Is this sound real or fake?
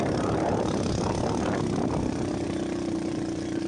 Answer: real